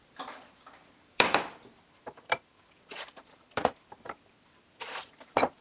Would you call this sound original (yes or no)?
no